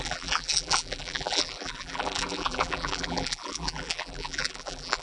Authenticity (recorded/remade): remade